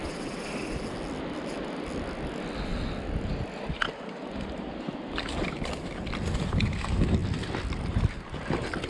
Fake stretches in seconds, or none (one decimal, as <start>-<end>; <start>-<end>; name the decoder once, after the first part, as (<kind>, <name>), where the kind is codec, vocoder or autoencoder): 0.0-0.6 (vocoder, BigVGAN v2)